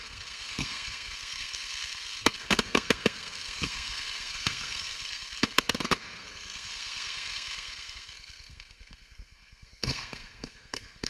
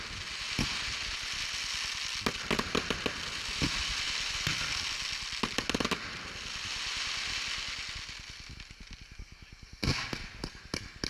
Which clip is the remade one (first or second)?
first